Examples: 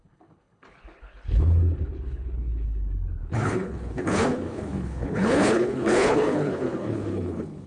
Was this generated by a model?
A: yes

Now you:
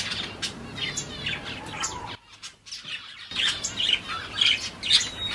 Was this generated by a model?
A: no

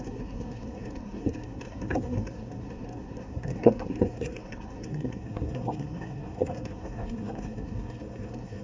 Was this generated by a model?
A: yes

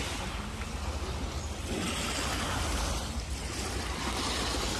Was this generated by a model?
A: no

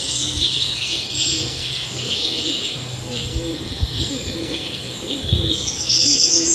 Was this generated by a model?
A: yes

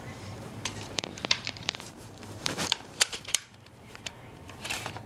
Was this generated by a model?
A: yes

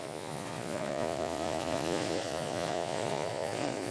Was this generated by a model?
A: yes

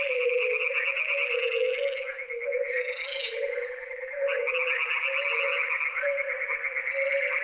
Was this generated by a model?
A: no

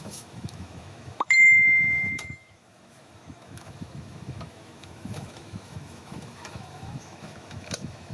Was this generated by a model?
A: yes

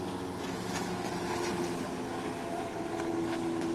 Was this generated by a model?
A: no